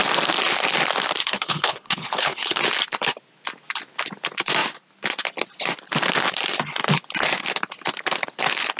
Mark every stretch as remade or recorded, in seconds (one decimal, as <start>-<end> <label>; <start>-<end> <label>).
0.0-1.2 recorded; 1.2-2.6 remade; 2.6-8.8 recorded